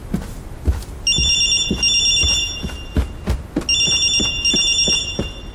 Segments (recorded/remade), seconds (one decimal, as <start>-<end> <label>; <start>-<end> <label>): 0.0-5.5 recorded